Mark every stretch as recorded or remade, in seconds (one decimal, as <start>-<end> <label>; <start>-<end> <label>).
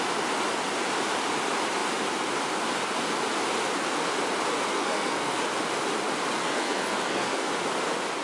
0.0-4.7 recorded; 4.7-5.4 remade; 5.4-6.4 recorded; 6.4-7.5 remade; 7.5-8.2 recorded